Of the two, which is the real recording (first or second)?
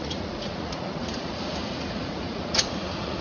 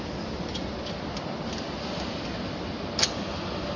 second